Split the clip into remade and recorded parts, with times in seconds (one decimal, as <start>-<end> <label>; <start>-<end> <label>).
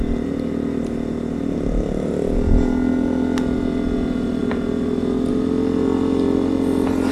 0.0-7.1 recorded